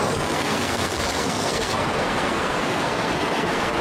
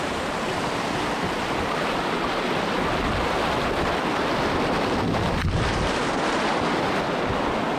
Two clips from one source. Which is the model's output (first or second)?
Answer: first